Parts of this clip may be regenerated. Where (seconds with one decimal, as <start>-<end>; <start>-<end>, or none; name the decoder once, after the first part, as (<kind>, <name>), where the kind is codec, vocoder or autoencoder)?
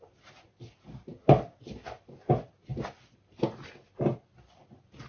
2.7-3.7 (vocoder, BigVGAN v2)